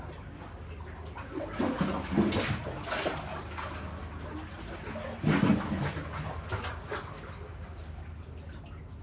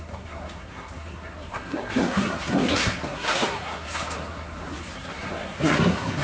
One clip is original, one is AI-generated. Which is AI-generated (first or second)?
second